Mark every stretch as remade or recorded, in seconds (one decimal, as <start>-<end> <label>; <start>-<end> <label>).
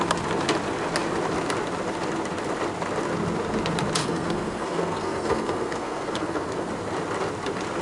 0.0-4.0 recorded; 4.0-6.7 remade; 6.7-7.8 recorded